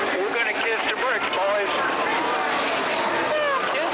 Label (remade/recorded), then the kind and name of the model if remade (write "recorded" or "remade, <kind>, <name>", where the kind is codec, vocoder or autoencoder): recorded